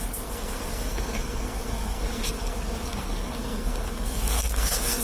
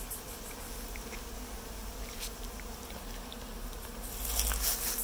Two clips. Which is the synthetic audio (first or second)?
first